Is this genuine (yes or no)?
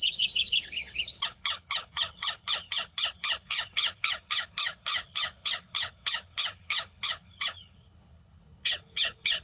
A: no